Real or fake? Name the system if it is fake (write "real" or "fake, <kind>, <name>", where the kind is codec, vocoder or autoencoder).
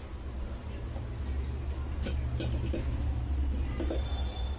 real